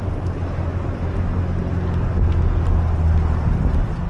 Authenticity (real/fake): real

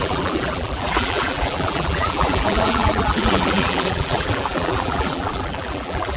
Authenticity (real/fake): fake